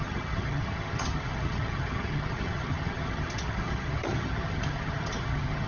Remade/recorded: remade